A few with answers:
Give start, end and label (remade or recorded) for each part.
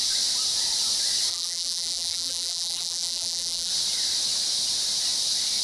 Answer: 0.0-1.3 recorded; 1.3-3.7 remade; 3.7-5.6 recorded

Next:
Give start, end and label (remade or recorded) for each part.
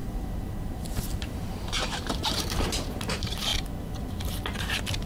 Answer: 0.0-3.5 remade; 3.5-5.1 recorded